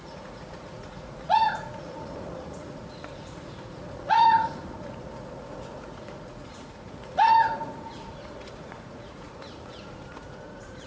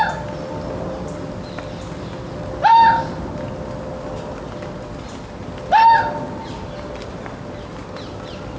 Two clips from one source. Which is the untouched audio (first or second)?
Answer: second